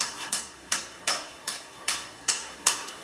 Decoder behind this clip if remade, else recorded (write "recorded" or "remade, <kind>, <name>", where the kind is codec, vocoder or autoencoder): remade, codec, SNAC